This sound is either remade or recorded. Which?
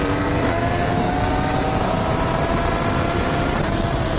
remade